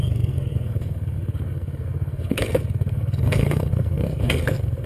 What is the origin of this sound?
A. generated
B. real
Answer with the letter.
A